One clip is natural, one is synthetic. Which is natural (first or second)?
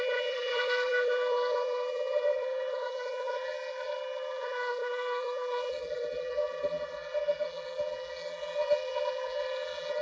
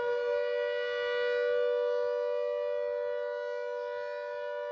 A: second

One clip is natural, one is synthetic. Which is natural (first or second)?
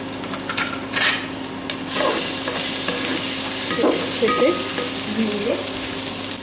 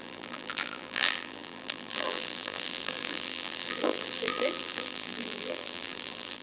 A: first